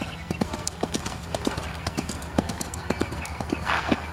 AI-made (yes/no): yes